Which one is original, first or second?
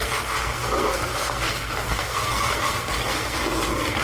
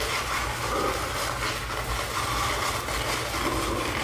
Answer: second